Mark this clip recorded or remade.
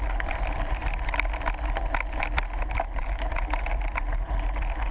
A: recorded